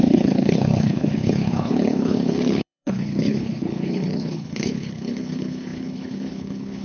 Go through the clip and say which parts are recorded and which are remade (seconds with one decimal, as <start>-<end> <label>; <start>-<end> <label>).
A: 0.0-6.8 remade